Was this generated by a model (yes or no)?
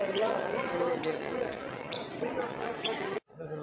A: yes